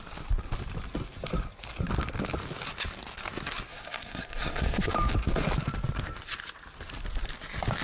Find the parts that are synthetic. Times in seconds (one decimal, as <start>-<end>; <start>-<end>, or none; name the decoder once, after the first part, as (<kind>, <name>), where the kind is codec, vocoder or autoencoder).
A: 3.7-4.9 (codec, SNAC)

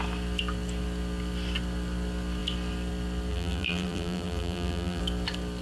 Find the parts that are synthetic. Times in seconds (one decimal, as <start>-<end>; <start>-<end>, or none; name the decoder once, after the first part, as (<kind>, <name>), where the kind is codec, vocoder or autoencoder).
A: 3.3-5.0 (vocoder, BigVGAN v2)

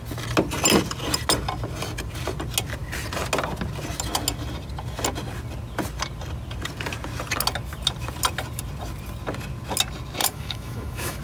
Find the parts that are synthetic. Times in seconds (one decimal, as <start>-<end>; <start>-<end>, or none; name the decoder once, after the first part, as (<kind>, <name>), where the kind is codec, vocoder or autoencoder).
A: 10.2-11.2 (autoencoder, DAC-VAE)

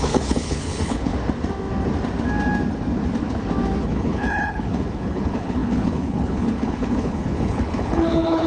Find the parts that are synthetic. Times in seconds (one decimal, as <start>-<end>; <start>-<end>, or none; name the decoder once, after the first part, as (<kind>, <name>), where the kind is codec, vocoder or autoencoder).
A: 0.0-1.1 (codec, HILCodec); 3.8-8.5

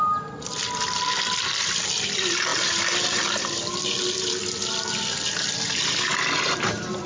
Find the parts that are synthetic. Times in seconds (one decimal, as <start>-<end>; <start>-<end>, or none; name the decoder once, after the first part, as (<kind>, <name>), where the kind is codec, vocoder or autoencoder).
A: none

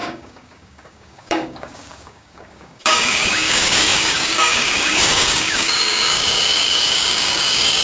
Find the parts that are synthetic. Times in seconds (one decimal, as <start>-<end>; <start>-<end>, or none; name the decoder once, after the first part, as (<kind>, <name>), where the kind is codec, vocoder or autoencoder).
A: 0.0-7.8 (codec, DAC)